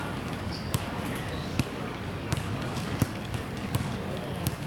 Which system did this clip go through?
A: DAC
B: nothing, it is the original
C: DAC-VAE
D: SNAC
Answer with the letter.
A